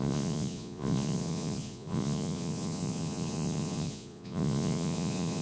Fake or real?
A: fake